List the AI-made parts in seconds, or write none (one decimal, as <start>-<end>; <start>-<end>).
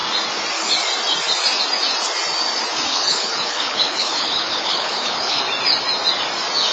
2.9-5.4